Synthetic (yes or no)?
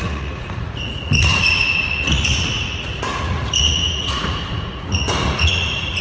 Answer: yes